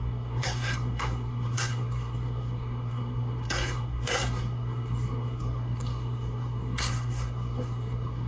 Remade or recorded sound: remade